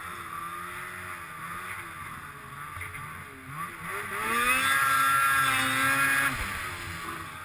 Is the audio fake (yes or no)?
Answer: no